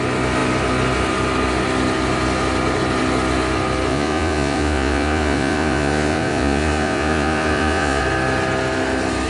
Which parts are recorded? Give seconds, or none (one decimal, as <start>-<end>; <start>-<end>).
0.0-3.9; 8.0-9.3